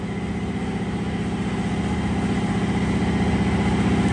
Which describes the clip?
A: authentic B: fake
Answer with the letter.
A